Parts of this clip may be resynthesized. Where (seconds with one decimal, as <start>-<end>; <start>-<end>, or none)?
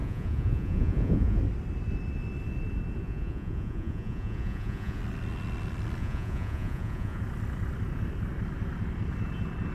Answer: 0.0-1.4; 3.0-5.0; 6.0-7.2